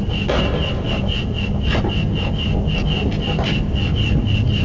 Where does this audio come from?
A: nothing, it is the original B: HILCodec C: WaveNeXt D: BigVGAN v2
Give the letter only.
A